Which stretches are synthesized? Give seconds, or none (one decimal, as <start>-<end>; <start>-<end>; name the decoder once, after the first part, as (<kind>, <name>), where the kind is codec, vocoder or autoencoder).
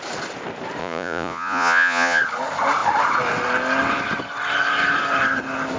0.8-2.2 (vocoder, Vocos)